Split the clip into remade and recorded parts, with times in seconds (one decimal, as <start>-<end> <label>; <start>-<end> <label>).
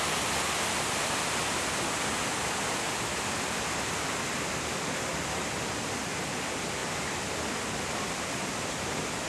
0.0-9.3 recorded